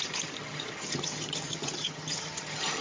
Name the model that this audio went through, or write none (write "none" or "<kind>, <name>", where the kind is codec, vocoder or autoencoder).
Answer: vocoder, HiFi-GAN